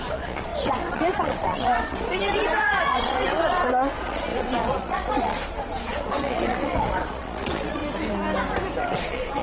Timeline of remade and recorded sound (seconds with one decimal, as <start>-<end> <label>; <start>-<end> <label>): 0.0-7.8 remade; 7.8-8.8 recorded; 8.8-9.4 remade